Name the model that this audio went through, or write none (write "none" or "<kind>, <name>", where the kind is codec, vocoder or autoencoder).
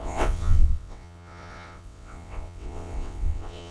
vocoder, WaveNeXt